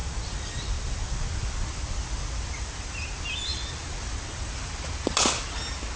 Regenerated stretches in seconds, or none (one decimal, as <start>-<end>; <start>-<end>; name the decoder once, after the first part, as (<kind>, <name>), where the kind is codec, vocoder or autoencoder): none